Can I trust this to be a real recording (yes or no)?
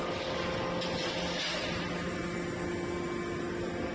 yes